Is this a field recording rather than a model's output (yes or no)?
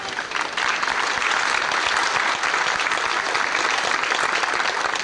yes